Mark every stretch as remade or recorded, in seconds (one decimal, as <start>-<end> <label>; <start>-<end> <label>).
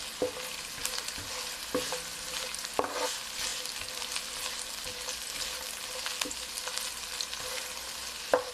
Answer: 0.0-8.5 recorded